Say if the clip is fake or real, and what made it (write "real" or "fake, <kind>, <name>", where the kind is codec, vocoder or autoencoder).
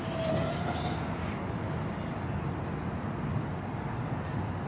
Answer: real